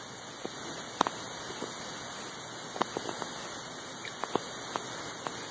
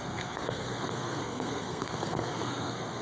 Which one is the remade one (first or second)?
second